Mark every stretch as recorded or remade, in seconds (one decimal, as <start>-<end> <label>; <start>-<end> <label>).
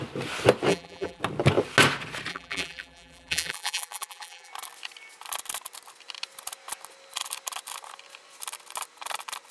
0.0-0.7 recorded; 0.7-1.2 remade; 1.2-2.3 recorded; 2.3-4.5 remade; 4.5-9.5 recorded